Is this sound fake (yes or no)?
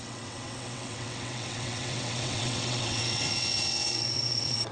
yes